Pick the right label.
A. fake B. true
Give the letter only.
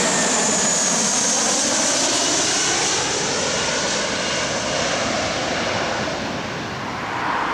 B